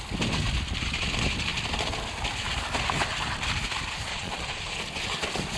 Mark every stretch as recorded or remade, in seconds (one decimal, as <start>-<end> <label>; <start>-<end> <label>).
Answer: 0.0-4.1 recorded; 4.1-4.8 remade; 4.8-5.6 recorded